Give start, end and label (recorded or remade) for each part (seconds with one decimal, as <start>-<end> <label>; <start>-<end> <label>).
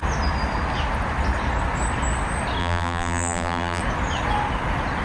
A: 0.0-2.6 recorded; 2.6-3.8 remade; 3.8-5.0 recorded